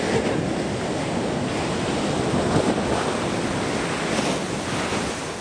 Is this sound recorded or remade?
recorded